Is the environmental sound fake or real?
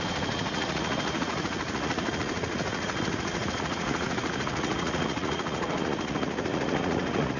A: fake